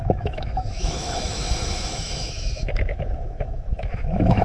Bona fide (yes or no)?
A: no